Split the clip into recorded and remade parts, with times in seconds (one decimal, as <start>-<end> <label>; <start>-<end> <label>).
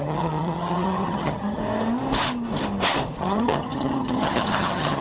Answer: 0.0-1.6 remade; 1.6-3.2 recorded; 3.2-5.0 remade